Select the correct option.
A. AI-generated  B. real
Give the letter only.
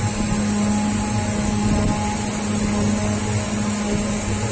B